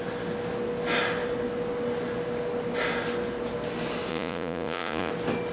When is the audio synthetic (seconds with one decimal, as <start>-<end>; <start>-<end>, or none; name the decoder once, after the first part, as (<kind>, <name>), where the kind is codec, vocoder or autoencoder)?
4.1-5.1 (vocoder, Vocos)